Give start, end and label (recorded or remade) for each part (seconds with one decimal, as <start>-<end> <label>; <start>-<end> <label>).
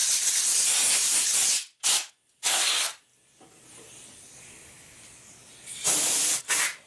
0.0-3.1 recorded; 3.1-6.4 remade; 6.4-6.9 recorded